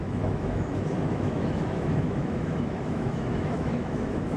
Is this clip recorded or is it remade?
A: remade